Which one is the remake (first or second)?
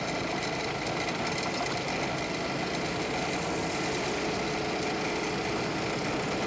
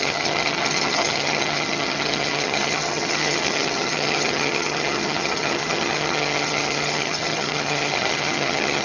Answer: second